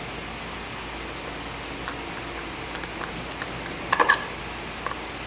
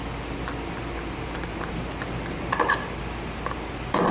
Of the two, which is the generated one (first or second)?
second